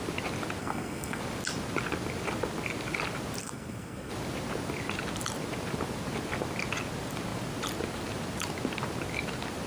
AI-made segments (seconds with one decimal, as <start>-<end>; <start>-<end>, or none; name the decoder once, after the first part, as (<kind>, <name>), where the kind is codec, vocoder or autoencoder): 0.6-1.2 (codec, SNAC); 3.4-4.1